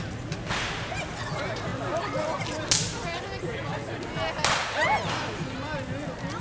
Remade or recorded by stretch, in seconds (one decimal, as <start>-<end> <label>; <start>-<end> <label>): 0.0-6.4 recorded